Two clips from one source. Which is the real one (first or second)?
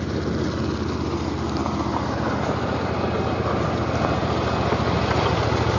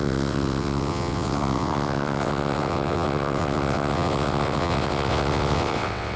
first